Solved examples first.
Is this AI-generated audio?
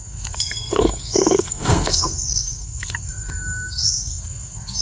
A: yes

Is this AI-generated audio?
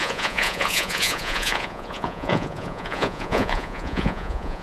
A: yes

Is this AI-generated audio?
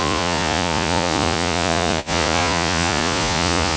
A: yes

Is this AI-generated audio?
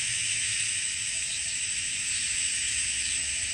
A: yes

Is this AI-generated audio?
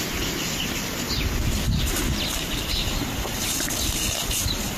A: no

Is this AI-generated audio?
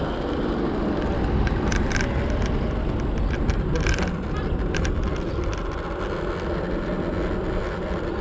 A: no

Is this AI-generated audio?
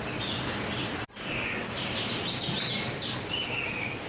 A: no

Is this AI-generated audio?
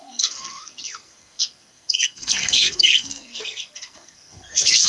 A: yes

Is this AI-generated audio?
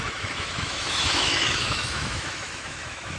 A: yes